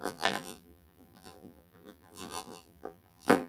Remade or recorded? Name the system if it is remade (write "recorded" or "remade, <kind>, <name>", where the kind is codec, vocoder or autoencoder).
remade, vocoder, BigVGAN v2